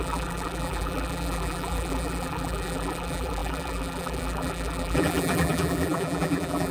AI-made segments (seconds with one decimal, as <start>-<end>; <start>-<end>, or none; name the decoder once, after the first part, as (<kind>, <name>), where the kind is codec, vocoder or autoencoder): 0.0-6.7 (vocoder, BigVGAN v2)